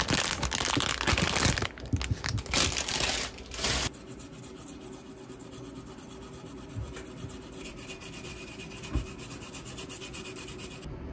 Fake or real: real